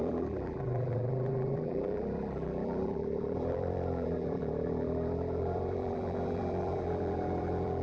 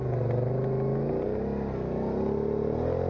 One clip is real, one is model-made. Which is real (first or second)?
second